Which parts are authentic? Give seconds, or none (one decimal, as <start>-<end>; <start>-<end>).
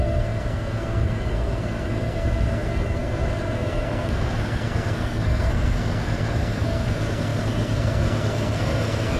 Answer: none